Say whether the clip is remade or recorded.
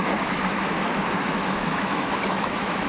remade